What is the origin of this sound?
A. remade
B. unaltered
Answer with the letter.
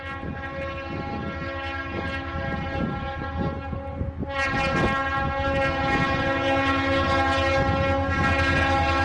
B